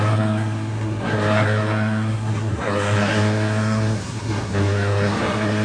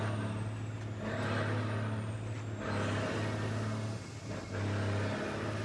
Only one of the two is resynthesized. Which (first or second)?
first